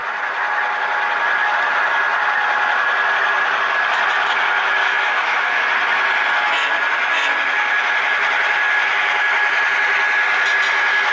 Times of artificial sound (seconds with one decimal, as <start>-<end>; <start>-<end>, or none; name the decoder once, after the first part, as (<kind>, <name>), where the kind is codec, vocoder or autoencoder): 4.8-5.6 (autoencoder, DAC-VAE)